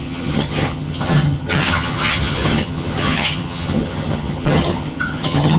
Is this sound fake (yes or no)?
yes